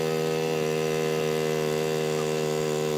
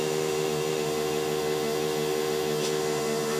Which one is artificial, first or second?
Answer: second